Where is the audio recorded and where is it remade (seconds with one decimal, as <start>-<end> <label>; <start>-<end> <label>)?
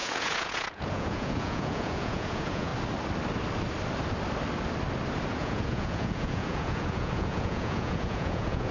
0.0-2.7 remade; 2.7-5.3 recorded; 5.3-8.7 remade